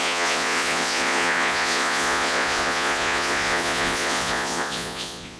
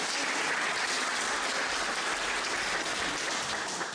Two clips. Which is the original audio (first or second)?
second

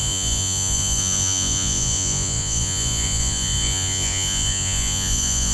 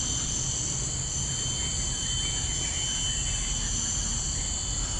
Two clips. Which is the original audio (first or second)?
second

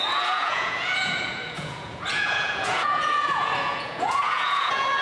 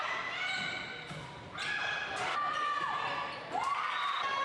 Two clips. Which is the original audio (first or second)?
second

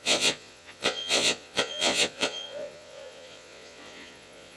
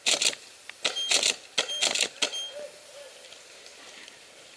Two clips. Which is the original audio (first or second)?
second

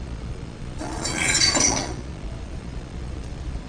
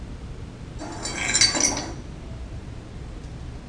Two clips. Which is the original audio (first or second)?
second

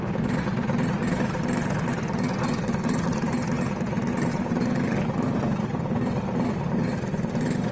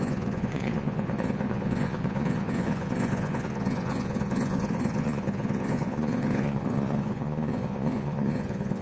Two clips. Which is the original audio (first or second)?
first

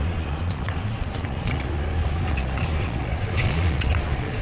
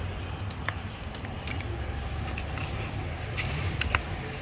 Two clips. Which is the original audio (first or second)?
second